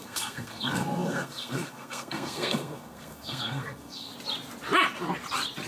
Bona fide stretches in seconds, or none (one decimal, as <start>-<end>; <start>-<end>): 4.1-5.7